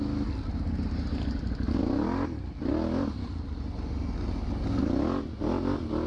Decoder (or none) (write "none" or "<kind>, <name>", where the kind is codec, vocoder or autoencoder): none